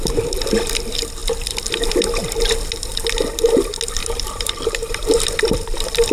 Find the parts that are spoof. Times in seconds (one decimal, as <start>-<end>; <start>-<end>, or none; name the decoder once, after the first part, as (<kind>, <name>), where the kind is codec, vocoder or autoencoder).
4.0-5.2 (vocoder, BigVGAN v2)